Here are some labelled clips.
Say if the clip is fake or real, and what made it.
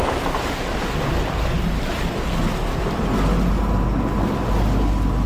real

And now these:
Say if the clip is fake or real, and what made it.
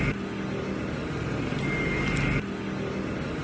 real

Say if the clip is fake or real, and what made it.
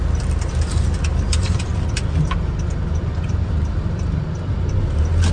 real